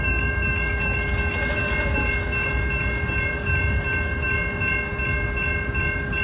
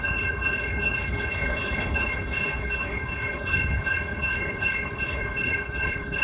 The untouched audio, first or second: first